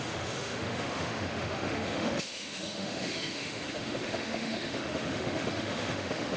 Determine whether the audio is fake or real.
fake